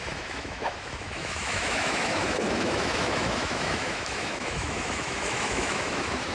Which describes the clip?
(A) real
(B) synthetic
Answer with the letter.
B